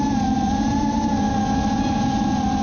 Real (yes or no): no